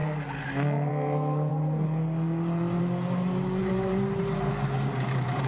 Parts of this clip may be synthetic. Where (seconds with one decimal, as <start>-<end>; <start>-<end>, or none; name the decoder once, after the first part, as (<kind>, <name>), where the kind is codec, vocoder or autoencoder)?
3.6-4.5 (vocoder, BigVGAN v2)